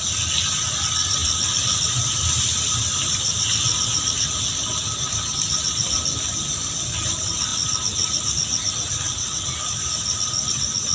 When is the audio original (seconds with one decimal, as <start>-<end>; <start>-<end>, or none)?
0.0-10.9